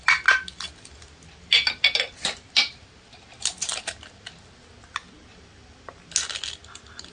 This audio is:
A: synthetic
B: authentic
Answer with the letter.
B